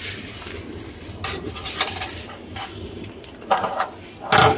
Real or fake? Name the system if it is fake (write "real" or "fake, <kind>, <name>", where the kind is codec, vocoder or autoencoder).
real